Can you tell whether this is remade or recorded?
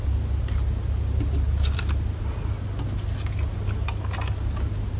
recorded